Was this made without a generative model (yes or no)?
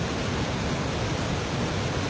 yes